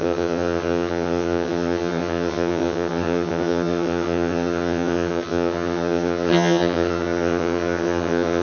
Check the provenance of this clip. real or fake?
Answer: fake